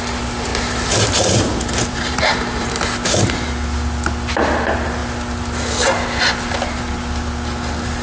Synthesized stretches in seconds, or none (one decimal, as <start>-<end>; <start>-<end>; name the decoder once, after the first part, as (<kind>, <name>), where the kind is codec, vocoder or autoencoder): 0.5-2.7 (vocoder, BigVGAN v2)